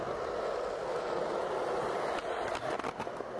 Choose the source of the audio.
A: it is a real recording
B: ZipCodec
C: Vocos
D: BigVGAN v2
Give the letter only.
A